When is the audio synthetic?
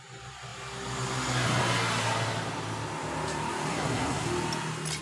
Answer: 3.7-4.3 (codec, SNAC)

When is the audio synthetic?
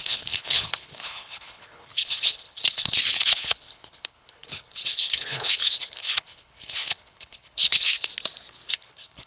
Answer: 0.0-8.1 (codec, HILCodec); 8.7-9.3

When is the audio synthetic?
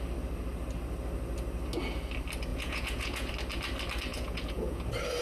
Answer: 2.5-3.3 (vocoder, Vocos); 4.1-4.8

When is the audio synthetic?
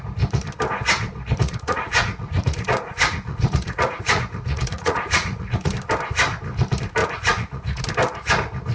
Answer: 1.4-5.7 (vocoder, Vocos); 7.0-7.8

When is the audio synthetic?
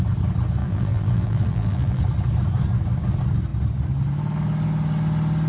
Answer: 0.6-2.0 (vocoder, BigVGAN v2)